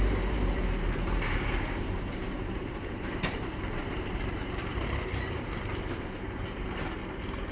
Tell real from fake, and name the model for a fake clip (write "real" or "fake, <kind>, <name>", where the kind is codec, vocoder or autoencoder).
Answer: fake, vocoder, BigVGAN v2